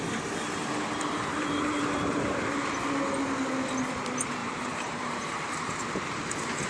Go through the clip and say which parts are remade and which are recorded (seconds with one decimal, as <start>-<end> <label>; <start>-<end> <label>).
0.0-0.6 recorded; 0.6-2.4 remade; 2.4-4.4 recorded; 4.4-6.7 remade